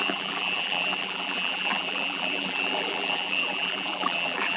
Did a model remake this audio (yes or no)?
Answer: yes